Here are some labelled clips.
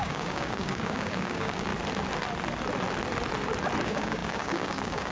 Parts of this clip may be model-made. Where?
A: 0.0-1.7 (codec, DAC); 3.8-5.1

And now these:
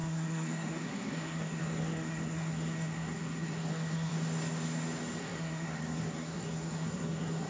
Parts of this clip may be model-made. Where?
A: 0.0-4.1 (codec, SNAC); 5.2-7.5

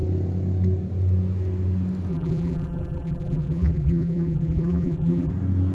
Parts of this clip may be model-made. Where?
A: 2.1-5.3 (vocoder, BigVGAN v2)

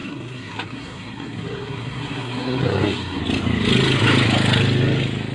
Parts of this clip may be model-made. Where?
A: 0.0-3.2 (codec, SNAC)

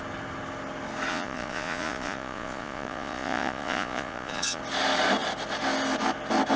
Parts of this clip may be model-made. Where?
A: 1.1-4.6 (vocoder, Vocos)